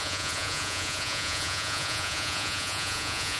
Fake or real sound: fake